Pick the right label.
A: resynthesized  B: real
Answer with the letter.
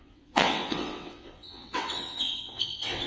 A